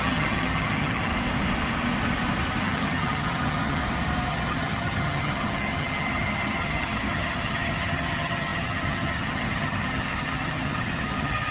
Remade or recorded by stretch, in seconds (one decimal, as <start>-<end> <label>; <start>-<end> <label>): 0.0-1.1 remade; 1.1-2.6 recorded; 2.6-3.8 remade; 3.8-4.3 recorded; 4.3-11.5 remade